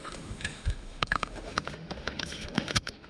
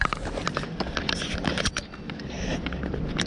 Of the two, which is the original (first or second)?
second